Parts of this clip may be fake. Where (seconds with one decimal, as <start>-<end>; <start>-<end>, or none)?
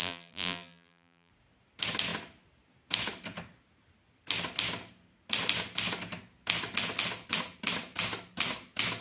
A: 0.0-1.3